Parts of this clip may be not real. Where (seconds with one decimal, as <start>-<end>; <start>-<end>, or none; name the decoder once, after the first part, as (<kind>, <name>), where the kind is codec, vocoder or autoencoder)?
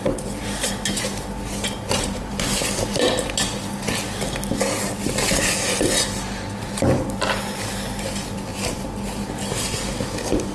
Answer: 8.5-9.2 (vocoder, BigVGAN v2)